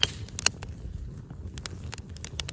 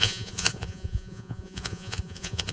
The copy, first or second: second